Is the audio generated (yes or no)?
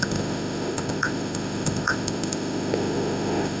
yes